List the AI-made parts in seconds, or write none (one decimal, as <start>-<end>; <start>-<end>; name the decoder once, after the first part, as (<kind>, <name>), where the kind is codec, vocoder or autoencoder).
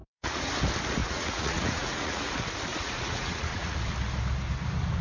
0.0-0.5 (vocoder, Vocos); 1.0-2.3; 2.7-3.8